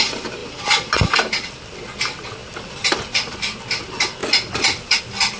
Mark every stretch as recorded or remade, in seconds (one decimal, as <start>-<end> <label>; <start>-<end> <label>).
0.0-0.4 recorded; 0.4-1.8 remade; 1.8-2.4 recorded; 2.4-3.4 remade; 3.4-5.4 recorded